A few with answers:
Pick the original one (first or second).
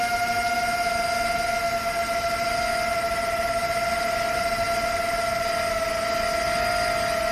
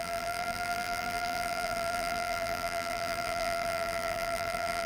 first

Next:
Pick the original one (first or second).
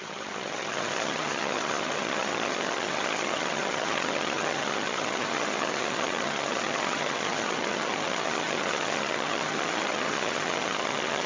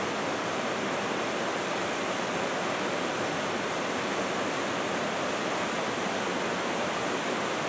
second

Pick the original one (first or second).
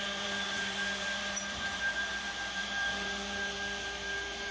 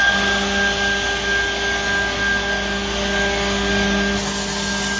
second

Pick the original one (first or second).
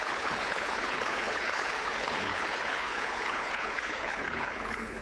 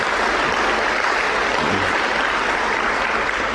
second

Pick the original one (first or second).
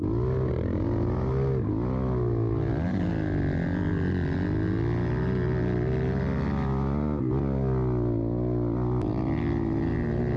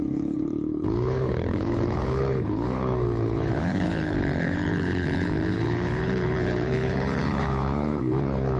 first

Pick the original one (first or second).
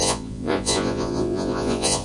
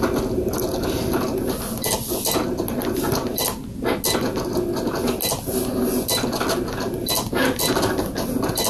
second